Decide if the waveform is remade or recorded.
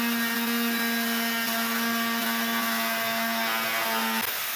recorded